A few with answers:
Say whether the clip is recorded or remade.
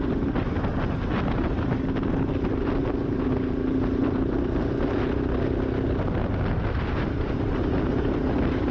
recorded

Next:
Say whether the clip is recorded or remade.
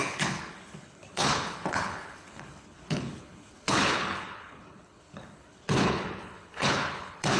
remade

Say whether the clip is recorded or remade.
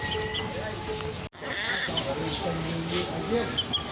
recorded